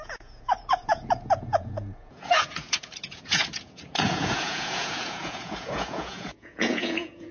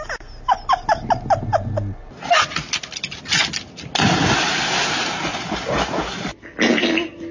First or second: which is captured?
second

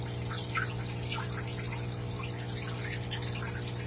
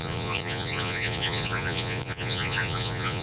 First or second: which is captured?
first